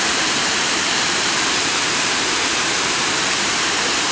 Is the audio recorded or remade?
remade